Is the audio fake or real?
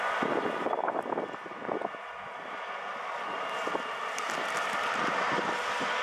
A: real